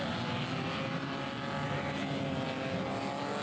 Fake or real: real